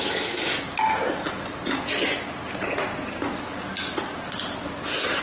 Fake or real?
real